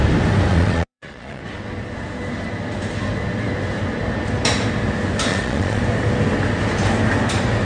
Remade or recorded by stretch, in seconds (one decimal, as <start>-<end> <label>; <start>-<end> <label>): 0.0-0.5 recorded; 0.5-1.4 remade; 1.4-5.3 recorded; 5.3-5.8 remade; 5.8-7.6 recorded

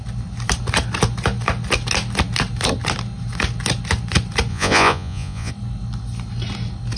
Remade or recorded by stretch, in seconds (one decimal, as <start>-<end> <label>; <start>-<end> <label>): 0.0-4.5 recorded; 4.5-5.5 remade; 5.5-7.0 recorded

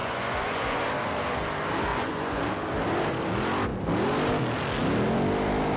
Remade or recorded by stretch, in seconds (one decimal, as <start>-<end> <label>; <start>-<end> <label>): 0.0-0.8 remade; 0.8-1.9 recorded; 1.9-2.4 remade; 2.4-5.8 recorded

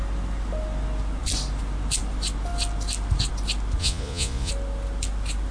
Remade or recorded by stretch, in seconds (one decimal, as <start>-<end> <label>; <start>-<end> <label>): 0.0-3.8 recorded; 3.8-4.5 remade; 4.5-5.5 recorded